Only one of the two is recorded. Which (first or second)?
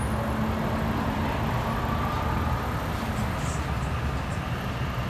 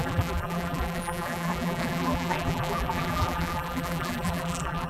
first